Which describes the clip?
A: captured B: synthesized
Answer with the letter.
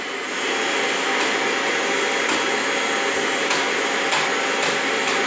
A